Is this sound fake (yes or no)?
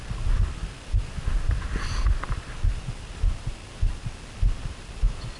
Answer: no